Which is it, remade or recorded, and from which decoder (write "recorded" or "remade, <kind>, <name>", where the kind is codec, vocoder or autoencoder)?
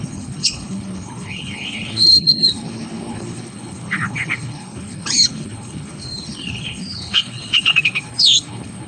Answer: remade, codec, HILCodec